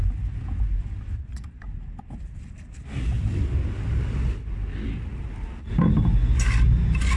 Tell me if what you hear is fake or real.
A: real